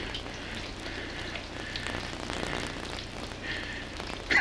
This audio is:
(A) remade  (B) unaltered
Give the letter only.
B